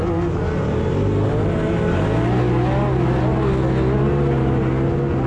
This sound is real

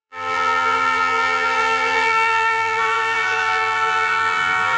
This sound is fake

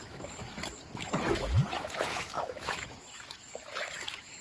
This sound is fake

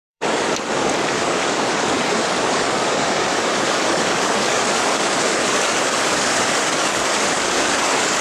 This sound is fake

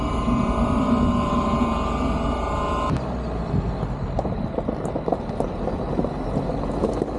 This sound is real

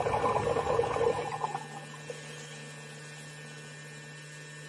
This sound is real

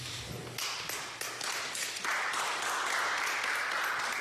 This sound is real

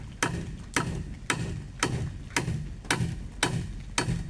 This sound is real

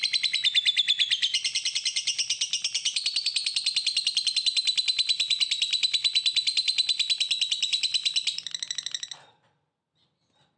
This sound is real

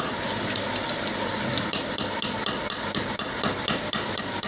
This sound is real